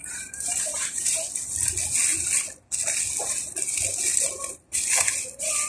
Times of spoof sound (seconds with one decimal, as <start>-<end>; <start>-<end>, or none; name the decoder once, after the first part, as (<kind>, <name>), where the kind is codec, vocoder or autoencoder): 0.0-1.1 (vocoder, BigVGAN v2)